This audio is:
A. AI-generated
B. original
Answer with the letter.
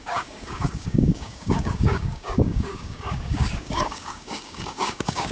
A